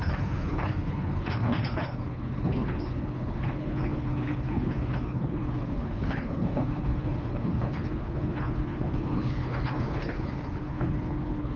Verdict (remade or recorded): remade